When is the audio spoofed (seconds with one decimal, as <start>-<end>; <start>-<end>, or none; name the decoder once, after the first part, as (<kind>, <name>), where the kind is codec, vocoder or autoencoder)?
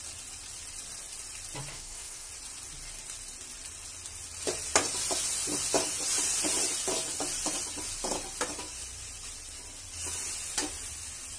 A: 1.7-2.3 (codec, SNAC)